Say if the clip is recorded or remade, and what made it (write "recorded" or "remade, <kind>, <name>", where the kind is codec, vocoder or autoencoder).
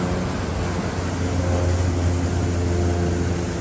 recorded